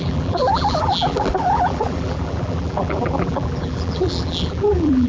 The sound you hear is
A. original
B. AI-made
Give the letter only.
B